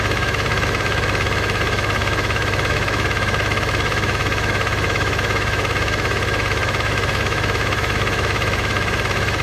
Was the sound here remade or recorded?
remade